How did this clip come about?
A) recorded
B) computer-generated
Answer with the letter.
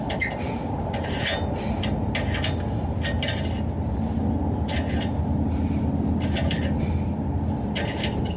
A